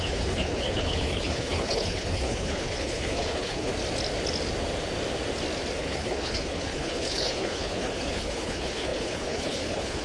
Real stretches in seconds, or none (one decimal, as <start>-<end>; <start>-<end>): 3.7-5.8